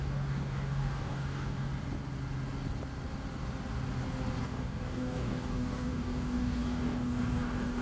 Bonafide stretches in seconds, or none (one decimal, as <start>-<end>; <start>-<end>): 1.7-4.4